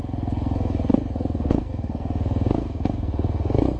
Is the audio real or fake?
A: fake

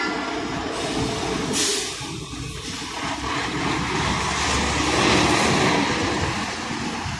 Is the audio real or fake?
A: real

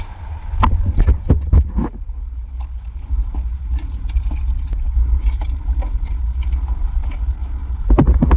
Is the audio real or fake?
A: real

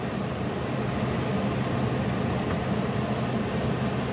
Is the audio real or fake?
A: real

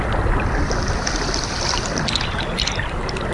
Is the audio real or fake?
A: real